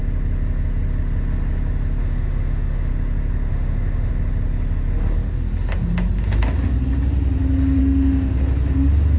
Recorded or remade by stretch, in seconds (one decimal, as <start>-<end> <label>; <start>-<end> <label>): 0.0-2.0 recorded; 2.0-2.9 remade; 2.9-3.5 recorded; 3.5-4.1 remade; 4.1-7.8 recorded; 7.8-8.4 remade; 8.4-9.2 recorded

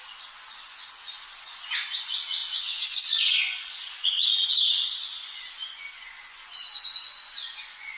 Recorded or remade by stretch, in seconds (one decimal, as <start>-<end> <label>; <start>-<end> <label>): 0.0-8.0 remade

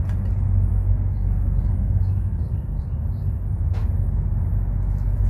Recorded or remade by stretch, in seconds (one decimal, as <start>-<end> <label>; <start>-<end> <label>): 0.0-0.7 recorded; 0.7-2.8 remade; 2.8-5.3 recorded

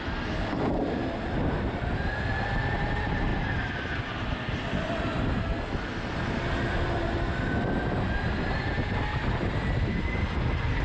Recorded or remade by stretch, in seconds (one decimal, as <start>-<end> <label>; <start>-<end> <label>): 0.0-10.8 recorded

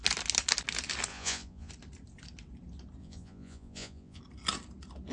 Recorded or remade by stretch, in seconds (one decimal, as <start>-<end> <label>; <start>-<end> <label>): 0.0-1.1 recorded; 1.1-1.7 remade; 1.7-3.0 recorded; 3.0-4.2 remade; 4.2-5.1 recorded